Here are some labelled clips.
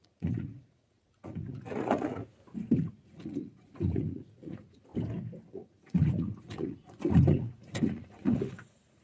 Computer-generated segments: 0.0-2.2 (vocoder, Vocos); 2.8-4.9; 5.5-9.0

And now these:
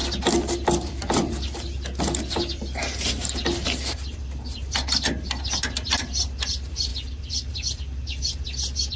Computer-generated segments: none

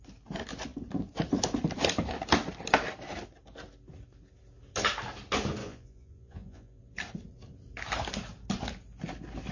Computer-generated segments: 5.6-6.8 (vocoder, Vocos)